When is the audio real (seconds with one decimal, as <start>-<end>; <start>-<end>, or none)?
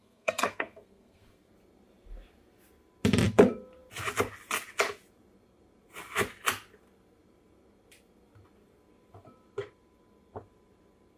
1.5-11.2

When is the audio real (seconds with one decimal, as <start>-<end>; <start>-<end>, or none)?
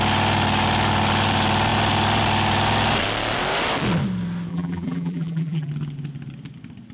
0.0-4.5; 5.7-6.9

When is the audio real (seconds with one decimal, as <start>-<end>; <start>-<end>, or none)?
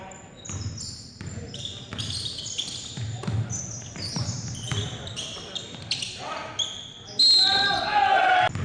0.0-8.6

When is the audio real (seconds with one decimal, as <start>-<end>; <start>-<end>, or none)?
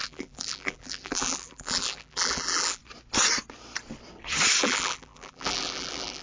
2.8-4.6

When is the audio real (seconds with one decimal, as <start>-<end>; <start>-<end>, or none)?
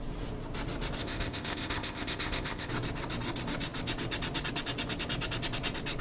0.0-1.0; 2.7-6.0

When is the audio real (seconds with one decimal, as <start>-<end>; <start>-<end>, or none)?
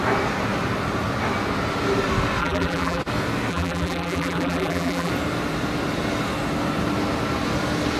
0.0-2.4; 3.0-3.5; 5.1-8.0